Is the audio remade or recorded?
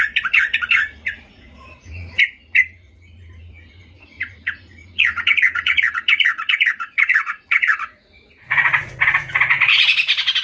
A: remade